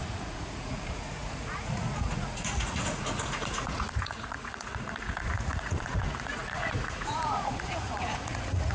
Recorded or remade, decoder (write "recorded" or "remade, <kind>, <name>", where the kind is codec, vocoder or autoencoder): remade, vocoder, Vocos